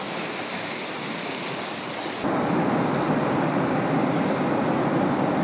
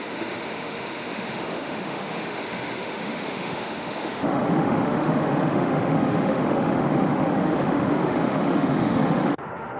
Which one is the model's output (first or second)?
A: second